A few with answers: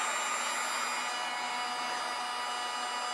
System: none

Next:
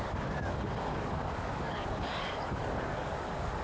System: codec, DAC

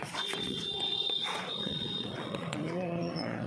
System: vocoder, Vocos